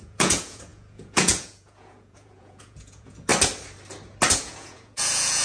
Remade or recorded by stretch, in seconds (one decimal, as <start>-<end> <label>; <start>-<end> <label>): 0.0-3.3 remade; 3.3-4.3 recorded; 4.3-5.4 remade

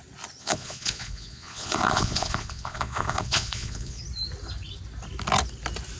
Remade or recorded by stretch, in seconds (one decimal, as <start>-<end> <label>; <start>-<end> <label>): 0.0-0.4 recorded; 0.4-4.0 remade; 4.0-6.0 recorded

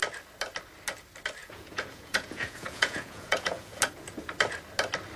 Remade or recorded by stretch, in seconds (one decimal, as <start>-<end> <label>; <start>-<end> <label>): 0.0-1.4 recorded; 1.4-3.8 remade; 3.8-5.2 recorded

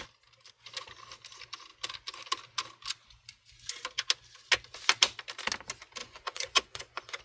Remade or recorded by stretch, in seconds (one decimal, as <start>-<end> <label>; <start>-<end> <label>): 0.0-6.0 recorded; 6.0-7.2 remade

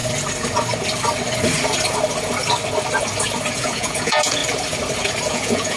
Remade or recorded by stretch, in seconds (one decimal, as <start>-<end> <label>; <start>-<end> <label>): 0.0-3.5 recorded; 3.5-4.4 remade; 4.4-5.3 recorded; 5.3-5.8 remade

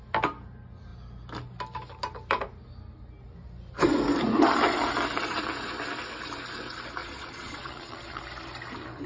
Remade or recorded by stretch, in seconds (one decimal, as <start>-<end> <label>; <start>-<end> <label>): 0.0-7.0 recorded; 7.0-8.2 remade; 8.2-9.1 recorded